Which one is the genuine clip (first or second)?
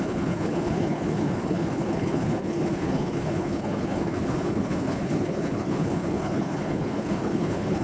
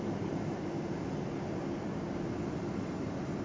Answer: second